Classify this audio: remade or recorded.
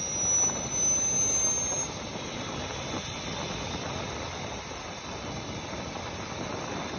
recorded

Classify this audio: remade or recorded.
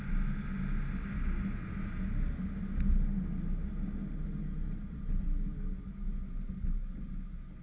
recorded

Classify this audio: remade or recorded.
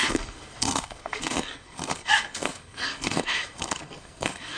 remade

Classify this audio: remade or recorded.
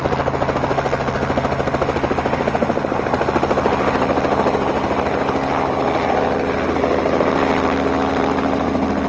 recorded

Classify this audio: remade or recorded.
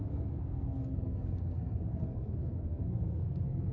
remade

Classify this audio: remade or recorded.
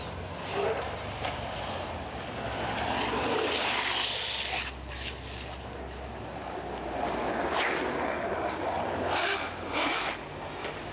recorded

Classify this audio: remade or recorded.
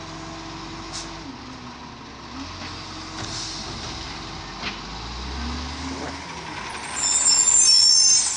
recorded